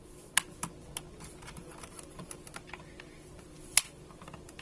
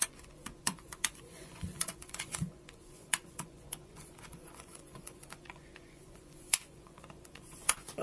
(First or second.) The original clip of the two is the first